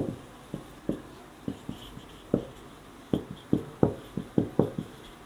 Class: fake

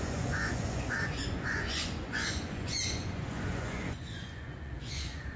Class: fake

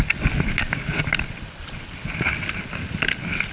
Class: real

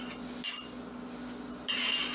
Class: real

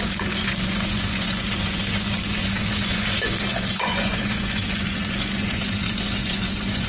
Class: fake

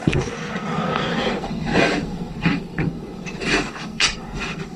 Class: fake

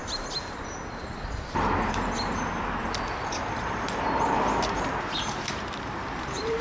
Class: fake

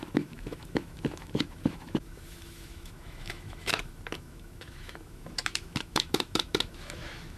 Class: fake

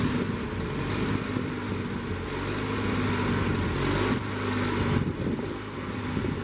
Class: real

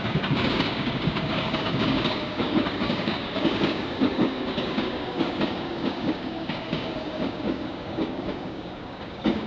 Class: fake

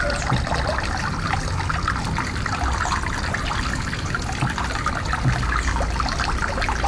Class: real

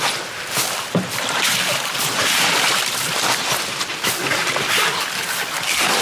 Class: real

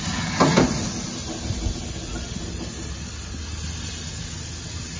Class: real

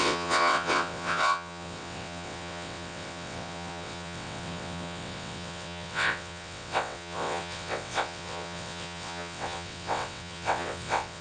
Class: fake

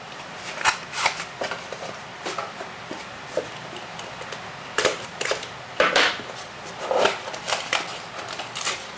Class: fake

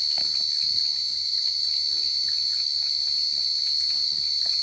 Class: real